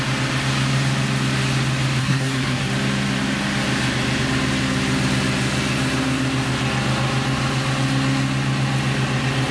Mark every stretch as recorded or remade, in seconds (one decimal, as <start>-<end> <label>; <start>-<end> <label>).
0.0-2.0 recorded; 2.0-2.7 remade; 2.7-9.5 recorded